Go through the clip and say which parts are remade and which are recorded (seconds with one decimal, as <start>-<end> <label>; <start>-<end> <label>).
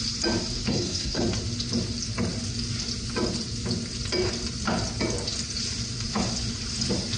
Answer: 0.0-0.7 recorded; 0.7-1.2 remade; 1.2-7.2 recorded